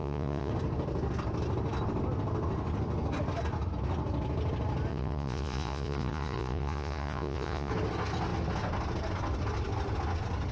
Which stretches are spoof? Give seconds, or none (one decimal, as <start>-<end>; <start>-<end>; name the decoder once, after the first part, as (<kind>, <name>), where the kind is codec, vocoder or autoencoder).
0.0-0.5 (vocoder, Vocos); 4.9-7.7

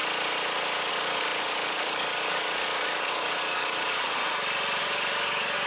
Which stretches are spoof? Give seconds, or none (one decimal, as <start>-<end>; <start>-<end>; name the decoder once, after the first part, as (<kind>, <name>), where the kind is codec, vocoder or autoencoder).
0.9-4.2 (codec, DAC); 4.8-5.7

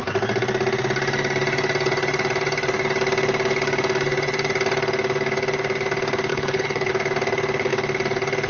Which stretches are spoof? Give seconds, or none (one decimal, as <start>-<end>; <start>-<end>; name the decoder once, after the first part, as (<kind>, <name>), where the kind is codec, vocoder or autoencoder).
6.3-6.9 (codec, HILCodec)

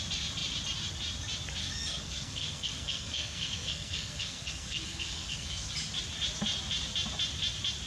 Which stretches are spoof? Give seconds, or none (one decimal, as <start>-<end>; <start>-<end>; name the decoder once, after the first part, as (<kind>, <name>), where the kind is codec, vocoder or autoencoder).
1.6-5.7 (codec, SNAC)

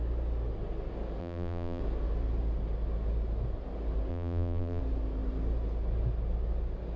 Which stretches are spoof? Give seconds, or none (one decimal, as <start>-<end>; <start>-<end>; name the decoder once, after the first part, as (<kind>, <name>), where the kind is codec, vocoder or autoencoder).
1.2-1.8 (vocoder, BigVGAN v2); 4.1-4.8

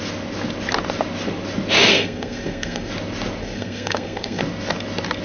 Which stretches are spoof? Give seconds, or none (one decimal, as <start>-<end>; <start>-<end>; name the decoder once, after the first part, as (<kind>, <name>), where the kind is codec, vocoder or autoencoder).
1.9-2.9 (codec, SNAC); 3.4-4.4